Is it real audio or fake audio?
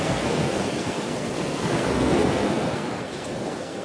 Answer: fake